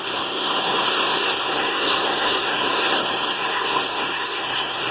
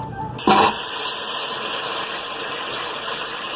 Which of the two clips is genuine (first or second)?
second